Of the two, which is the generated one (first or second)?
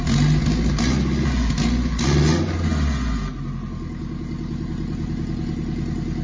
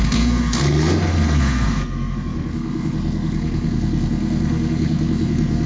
second